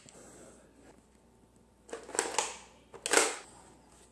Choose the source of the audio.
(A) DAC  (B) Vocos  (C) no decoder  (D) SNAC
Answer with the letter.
C